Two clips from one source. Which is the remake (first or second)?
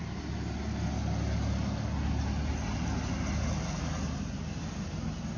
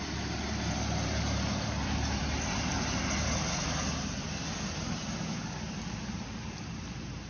second